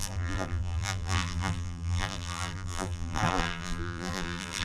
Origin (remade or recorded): remade